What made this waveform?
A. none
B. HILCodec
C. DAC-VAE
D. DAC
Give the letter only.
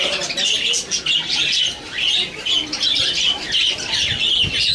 A